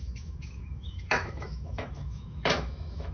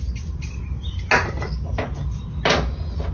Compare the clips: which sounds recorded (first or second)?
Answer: second